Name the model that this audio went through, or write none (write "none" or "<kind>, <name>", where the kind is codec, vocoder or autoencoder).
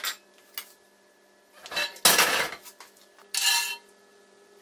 none